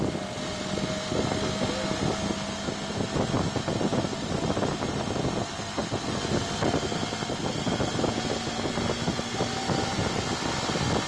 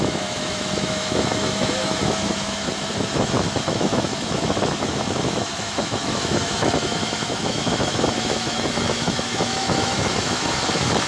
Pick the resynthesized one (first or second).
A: second